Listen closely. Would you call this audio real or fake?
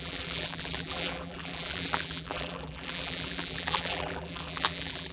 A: fake